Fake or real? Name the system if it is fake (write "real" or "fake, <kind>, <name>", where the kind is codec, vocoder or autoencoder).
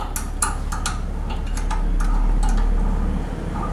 real